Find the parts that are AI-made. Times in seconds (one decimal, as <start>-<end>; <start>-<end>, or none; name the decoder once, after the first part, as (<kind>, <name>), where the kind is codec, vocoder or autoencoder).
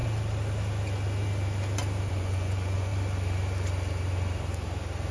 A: 2.1-2.9 (vocoder, Vocos)